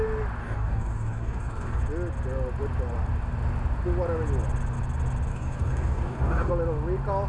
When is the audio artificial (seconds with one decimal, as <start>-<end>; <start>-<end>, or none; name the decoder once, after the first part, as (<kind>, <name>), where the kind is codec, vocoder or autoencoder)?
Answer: 0.4-1.8 (codec, DAC); 5.3-6.5